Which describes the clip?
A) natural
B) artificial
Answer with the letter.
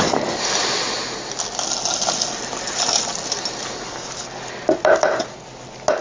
A